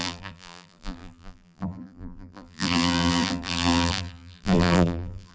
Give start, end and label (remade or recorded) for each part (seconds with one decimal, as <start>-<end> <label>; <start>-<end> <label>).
0.0-5.3 remade